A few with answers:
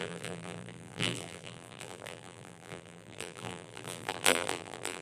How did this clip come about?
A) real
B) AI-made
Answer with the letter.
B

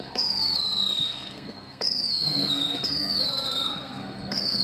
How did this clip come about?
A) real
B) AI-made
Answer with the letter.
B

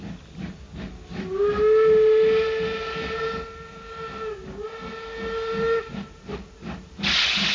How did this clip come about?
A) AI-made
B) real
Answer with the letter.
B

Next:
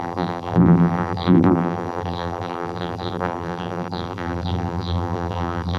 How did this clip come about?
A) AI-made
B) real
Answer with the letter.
A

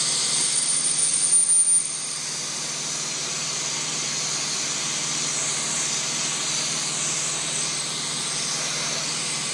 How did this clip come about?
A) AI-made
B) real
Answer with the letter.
B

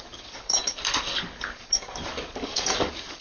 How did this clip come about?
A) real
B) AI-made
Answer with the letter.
B